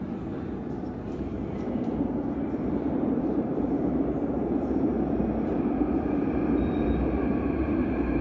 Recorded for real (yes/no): no